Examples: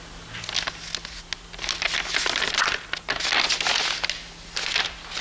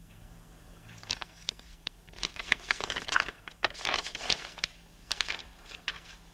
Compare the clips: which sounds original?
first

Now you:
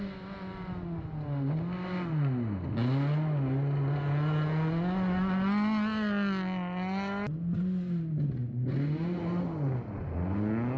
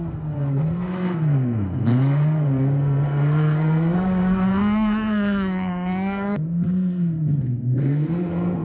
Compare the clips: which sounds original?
first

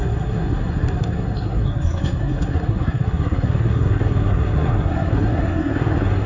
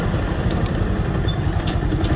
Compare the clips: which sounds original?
second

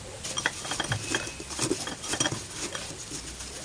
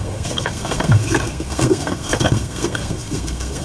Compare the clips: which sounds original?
first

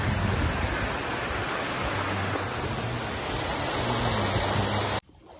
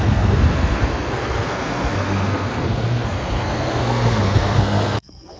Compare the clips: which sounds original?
first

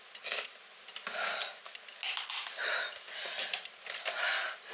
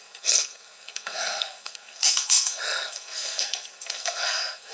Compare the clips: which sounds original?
first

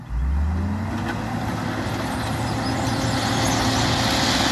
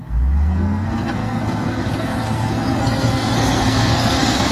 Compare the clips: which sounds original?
first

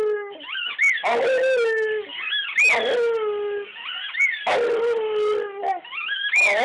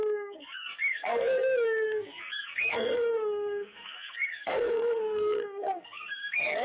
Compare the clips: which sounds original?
first